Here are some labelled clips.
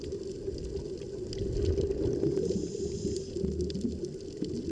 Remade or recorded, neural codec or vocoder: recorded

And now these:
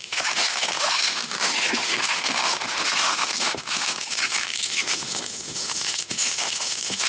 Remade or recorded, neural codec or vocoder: remade, autoencoder, DAC-VAE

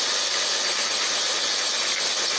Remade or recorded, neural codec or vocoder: recorded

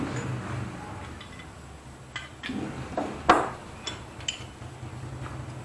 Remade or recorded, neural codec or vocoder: recorded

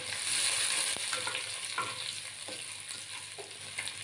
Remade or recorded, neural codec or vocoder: recorded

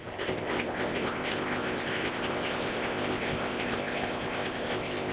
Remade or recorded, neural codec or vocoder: remade, codec, ZipCodec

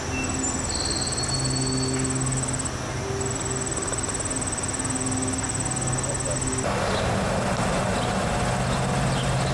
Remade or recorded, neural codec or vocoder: recorded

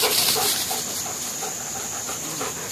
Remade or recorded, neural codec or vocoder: remade, vocoder, BigVGAN v2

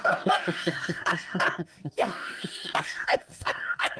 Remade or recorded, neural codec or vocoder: remade, codec, SNAC